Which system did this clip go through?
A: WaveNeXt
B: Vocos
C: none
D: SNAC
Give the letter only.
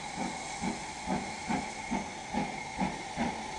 C